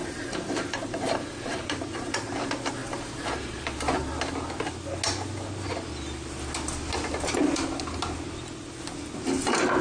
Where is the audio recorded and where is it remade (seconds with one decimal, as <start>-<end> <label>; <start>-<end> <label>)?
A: 0.0-2.3 remade; 2.3-2.8 recorded; 2.8-4.2 remade; 4.2-9.8 recorded